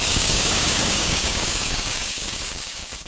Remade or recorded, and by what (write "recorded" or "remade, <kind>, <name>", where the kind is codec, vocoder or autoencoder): remade, codec, DAC